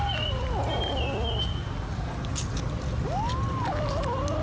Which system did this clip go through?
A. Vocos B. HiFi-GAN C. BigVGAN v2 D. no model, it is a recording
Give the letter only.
D